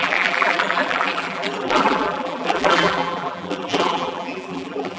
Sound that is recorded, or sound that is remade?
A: remade